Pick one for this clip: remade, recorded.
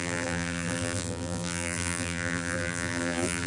remade